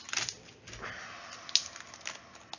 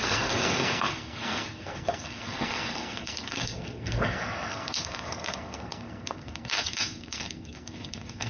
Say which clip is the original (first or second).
first